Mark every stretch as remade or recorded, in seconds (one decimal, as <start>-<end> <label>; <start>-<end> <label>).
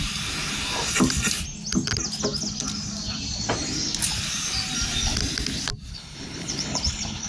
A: 0.0-5.9 recorded; 5.9-7.3 remade